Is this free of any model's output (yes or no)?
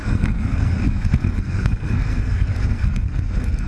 no